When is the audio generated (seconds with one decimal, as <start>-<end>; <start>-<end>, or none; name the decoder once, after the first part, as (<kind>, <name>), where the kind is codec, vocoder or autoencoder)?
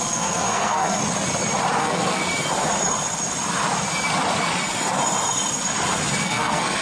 0.0-1.0 (codec, SNAC); 1.8-2.2; 6.2-6.8